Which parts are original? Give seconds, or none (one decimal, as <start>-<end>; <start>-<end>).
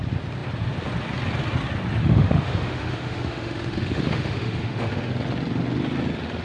0.0-2.0; 5.1-6.4